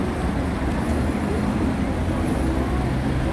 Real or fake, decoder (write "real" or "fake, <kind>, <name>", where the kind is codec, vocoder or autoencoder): real